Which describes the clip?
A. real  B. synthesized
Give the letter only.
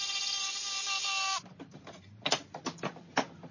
A